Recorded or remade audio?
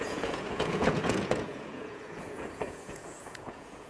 remade